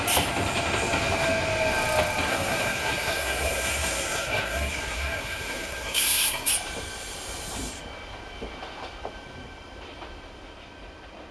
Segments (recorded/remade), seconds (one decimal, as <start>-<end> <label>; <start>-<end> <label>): 0.0-2.3 recorded; 2.3-6.5 remade; 6.5-11.3 recorded

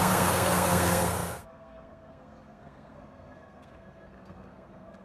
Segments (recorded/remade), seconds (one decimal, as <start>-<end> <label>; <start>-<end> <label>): 0.0-5.0 remade

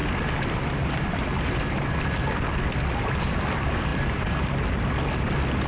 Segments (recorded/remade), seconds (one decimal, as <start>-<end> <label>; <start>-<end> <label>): 0.0-5.7 recorded

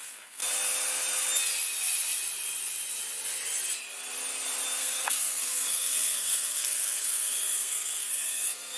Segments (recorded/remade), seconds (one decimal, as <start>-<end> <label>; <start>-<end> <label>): 0.0-0.4 remade; 0.4-4.8 recorded; 4.8-8.8 remade

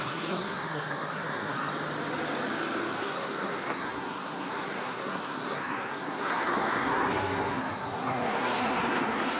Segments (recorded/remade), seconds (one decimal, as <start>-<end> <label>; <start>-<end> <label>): 0.0-1.7 remade; 1.7-3.0 recorded; 3.0-9.4 remade

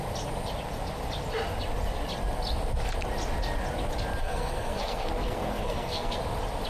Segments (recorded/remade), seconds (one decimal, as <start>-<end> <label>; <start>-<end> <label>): 0.0-4.2 recorded; 4.2-6.2 remade; 6.2-6.7 recorded